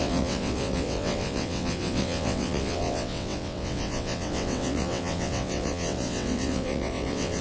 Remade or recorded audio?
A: remade